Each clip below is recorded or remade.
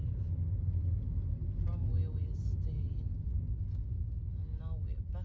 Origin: recorded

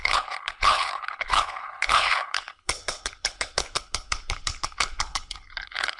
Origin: remade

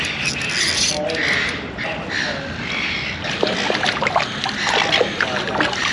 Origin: recorded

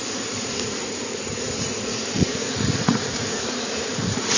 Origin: remade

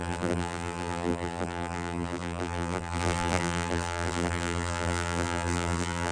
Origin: remade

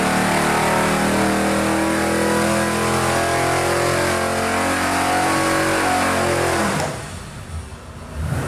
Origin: recorded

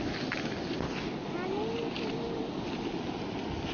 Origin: recorded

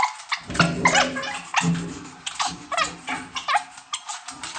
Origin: recorded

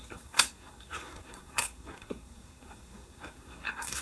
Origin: remade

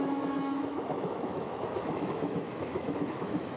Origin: remade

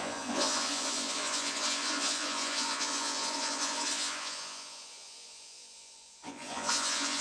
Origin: remade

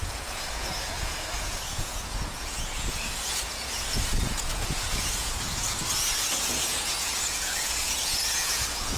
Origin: remade